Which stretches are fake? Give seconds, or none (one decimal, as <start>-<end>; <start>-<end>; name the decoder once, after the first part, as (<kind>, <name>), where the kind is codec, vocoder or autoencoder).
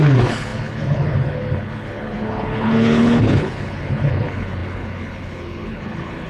0.0-6.3 (codec, HILCodec)